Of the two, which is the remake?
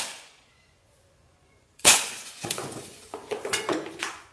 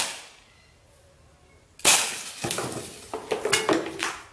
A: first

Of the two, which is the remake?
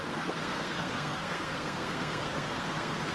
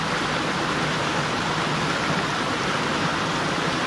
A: first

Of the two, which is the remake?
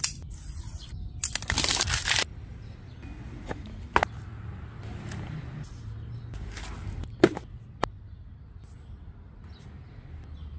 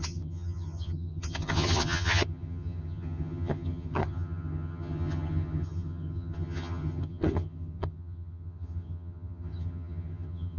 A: second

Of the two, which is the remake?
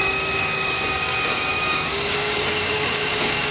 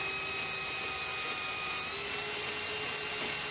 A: first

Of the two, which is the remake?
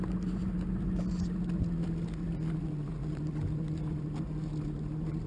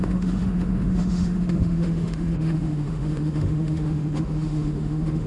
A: second